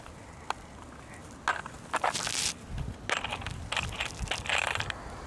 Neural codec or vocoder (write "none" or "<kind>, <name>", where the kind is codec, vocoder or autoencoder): none